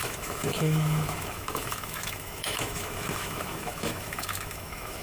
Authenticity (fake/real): fake